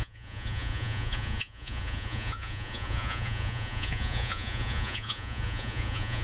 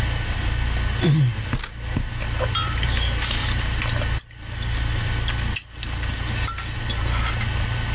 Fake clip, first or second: first